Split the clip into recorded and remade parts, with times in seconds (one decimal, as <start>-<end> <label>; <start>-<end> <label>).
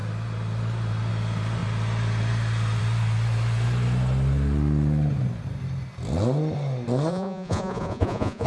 0.0-7.1 recorded; 7.1-8.5 remade